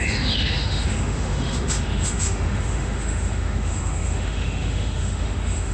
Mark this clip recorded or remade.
remade